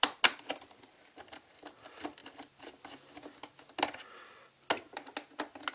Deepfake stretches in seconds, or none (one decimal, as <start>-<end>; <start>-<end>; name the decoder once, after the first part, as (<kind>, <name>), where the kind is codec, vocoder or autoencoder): none